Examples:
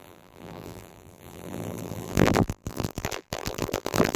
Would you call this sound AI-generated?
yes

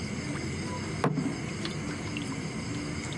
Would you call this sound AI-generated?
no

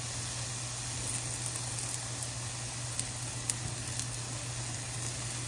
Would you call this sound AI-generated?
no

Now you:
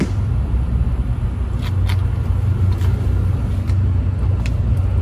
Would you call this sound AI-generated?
no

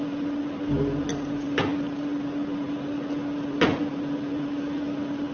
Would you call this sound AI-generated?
no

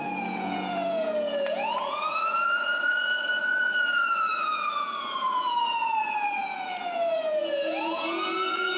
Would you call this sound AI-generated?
yes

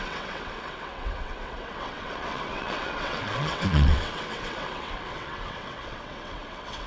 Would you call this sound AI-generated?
yes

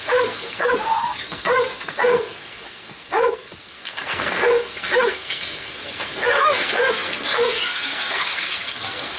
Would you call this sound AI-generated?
yes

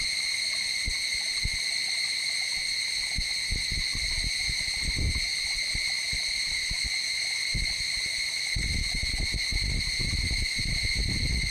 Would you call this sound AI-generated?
no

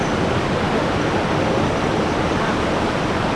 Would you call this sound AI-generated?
no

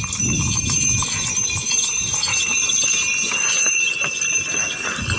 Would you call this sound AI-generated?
no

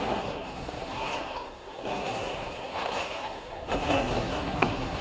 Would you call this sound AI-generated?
yes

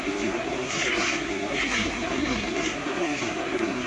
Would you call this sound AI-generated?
yes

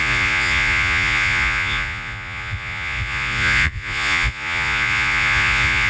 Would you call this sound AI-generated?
yes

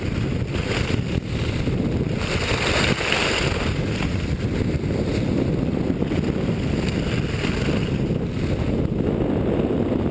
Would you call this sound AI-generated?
no